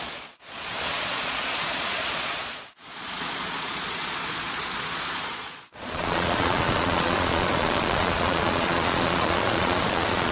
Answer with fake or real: fake